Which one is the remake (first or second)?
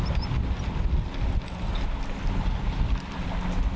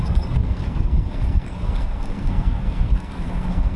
second